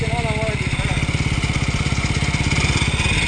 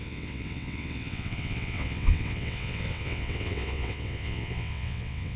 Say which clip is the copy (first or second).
second